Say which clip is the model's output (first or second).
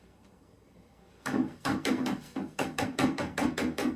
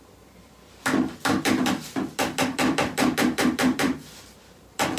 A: first